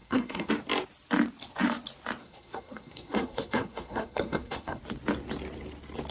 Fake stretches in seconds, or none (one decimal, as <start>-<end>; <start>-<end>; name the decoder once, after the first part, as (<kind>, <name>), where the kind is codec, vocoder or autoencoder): 0.0-0.5 (codec, SNAC); 2.2-4.8